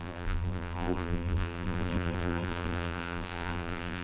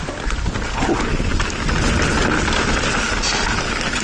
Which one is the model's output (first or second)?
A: first